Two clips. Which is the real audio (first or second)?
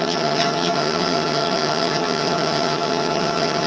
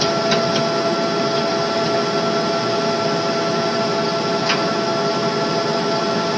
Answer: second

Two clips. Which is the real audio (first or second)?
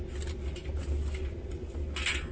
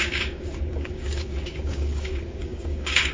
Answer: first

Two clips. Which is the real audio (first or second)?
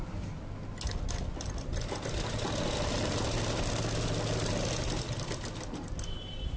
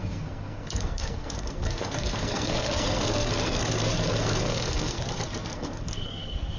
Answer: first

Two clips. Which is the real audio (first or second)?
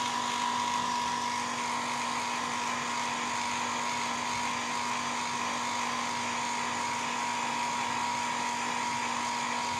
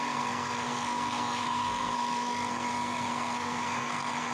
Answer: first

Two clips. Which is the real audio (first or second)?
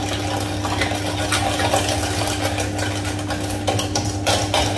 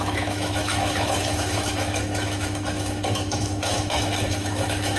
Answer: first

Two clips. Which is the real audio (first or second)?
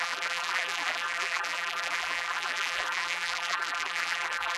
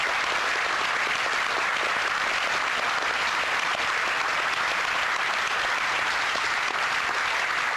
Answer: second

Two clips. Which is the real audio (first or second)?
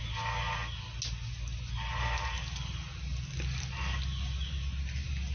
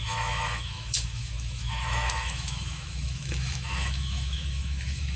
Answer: first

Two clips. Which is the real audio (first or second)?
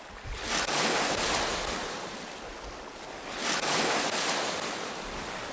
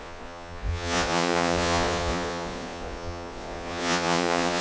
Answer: first